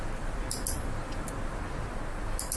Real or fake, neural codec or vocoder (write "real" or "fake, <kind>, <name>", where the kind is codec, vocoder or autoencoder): real